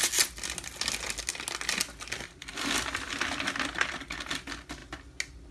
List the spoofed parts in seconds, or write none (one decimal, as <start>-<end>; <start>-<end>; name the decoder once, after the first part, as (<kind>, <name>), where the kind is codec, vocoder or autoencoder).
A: none